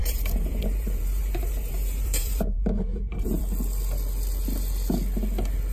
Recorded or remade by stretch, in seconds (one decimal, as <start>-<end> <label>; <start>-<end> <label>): 0.0-3.4 remade; 3.4-5.7 recorded